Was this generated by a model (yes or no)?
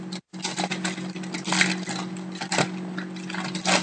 no